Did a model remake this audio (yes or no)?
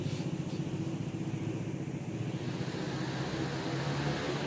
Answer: no